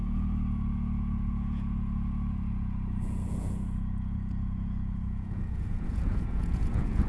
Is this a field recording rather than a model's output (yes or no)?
no